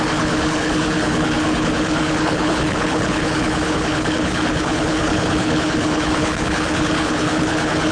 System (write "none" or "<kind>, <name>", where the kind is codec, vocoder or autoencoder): codec, HILCodec